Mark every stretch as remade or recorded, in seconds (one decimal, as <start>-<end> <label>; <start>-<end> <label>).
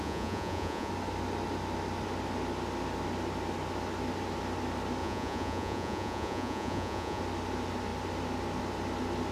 0.0-0.9 remade; 0.9-5.0 recorded; 5.0-7.2 remade; 7.2-9.3 recorded